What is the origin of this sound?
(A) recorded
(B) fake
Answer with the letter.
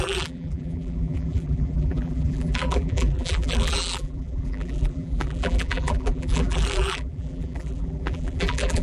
B